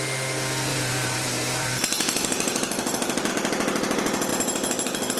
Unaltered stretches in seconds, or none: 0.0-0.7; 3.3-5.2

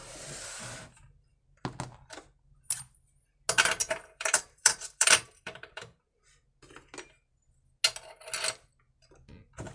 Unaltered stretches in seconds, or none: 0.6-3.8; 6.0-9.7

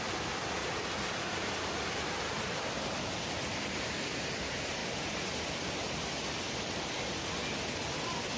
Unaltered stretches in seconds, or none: 0.0-0.6; 4.1-4.8; 5.4-8.4

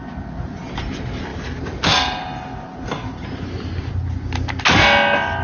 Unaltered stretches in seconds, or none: 0.0-1.3; 3.9-5.4

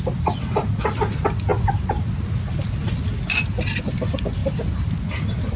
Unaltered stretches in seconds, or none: 0.0-5.6